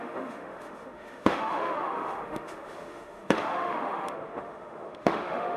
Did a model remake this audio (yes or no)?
yes